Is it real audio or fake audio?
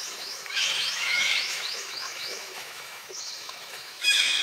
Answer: fake